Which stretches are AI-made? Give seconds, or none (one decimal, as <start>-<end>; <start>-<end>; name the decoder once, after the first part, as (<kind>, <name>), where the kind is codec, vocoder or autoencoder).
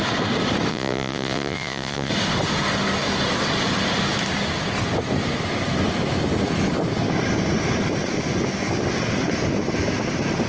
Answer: 0.7-2.1 (vocoder, Vocos)